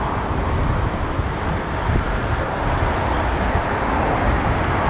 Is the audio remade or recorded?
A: recorded